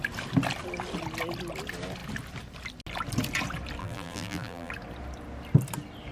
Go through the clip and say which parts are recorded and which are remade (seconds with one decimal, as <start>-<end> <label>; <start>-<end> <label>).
0.0-3.8 recorded; 3.8-4.7 remade; 4.7-6.1 recorded